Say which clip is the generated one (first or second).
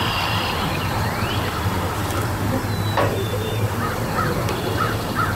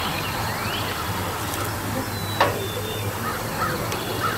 first